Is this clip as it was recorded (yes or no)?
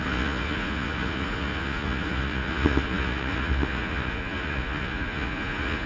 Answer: no